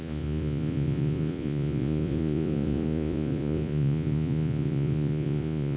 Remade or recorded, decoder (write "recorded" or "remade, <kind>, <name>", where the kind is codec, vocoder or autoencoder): remade, vocoder, Vocos